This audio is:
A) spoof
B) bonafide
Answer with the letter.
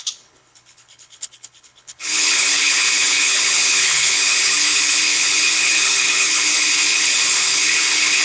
A